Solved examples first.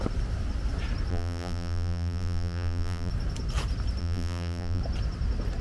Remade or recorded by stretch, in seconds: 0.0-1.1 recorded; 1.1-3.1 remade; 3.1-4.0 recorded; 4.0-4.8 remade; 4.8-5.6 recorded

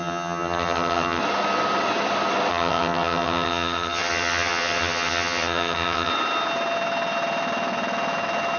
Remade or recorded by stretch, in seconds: 0.0-1.2 remade; 1.2-2.5 recorded; 2.5-6.1 remade; 6.1-8.6 recorded